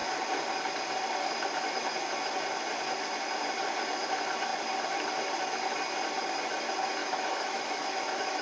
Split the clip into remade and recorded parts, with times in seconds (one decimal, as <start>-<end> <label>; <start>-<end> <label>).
0.0-7.0 recorded; 7.0-8.4 remade